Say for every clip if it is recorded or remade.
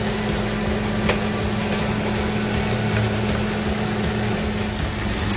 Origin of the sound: recorded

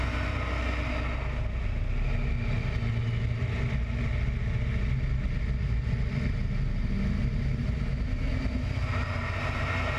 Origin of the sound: recorded